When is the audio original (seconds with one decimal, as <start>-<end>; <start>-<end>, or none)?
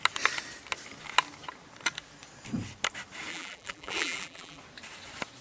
0.0-3.3; 4.6-5.4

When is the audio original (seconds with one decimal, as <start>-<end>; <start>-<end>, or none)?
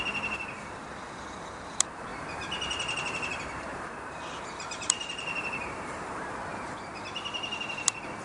0.0-2.1; 7.0-8.2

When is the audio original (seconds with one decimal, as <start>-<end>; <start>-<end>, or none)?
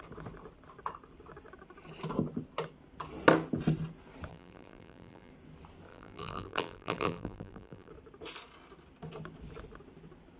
0.0-4.3; 5.3-5.9; 7.9-10.4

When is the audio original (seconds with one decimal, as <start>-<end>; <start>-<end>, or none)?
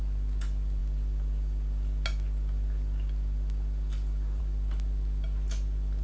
0.0-6.0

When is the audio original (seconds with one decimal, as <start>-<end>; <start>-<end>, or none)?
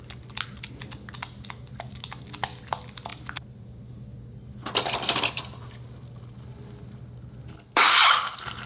0.0-3.1; 3.8-8.7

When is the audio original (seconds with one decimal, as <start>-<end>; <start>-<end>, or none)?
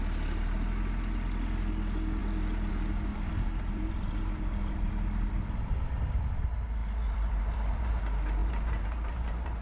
0.0-3.1; 4.9-6.8; 8.0-8.4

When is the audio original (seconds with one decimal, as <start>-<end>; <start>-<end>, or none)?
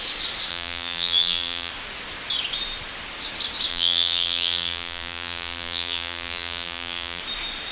0.0-0.5; 1.7-3.7; 7.2-7.7